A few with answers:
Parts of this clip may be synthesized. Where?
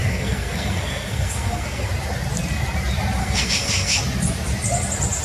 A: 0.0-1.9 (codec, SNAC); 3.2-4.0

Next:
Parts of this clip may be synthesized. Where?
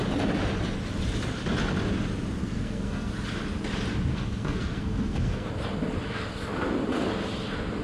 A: 2.4-3.1 (codec, SNAC); 4.1-5.5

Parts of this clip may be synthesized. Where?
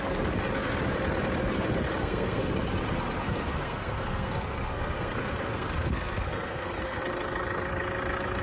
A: 2.0-2.5 (codec, SNAC); 3.2-7.0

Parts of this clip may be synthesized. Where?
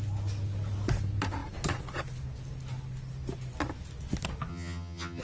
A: 4.5-5.2 (vocoder, HiFi-GAN)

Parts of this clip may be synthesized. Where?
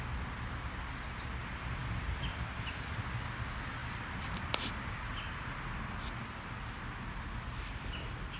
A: none